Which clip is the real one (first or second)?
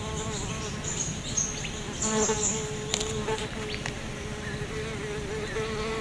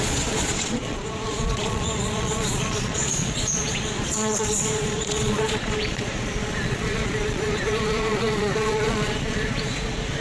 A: first